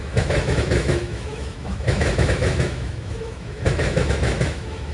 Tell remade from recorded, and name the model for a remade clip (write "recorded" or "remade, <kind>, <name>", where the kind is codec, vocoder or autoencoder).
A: remade, autoencoder, DAC-VAE